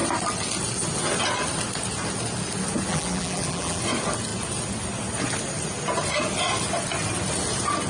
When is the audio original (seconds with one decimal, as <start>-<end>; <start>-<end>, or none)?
0.0-2.9; 3.8-7.9